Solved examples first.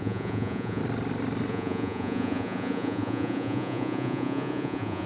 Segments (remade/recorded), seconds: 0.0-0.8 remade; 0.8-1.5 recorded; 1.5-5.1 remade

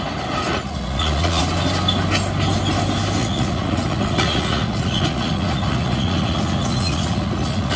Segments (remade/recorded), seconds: 0.0-0.5 recorded; 0.5-1.4 remade; 1.4-3.2 recorded; 3.2-7.8 remade

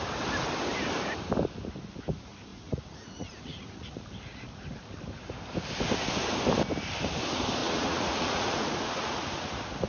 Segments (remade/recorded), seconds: 0.0-2.5 recorded; 2.5-4.0 remade; 4.0-7.6 recorded; 7.6-9.2 remade; 9.2-9.9 recorded

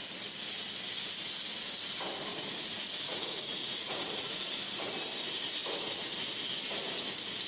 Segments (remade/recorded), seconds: 0.0-2.3 recorded; 2.3-4.4 remade; 4.4-7.5 recorded